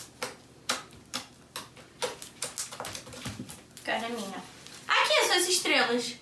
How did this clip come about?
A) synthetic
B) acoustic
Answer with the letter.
B